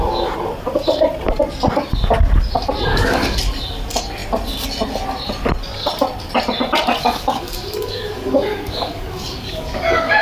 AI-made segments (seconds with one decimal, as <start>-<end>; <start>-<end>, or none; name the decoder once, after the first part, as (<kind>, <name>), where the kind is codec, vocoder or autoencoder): 2.9-3.4 (codec, DAC); 7.0-10.2